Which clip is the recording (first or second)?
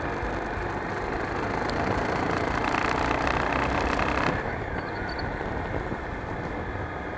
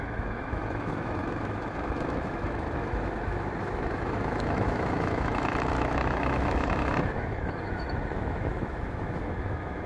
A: first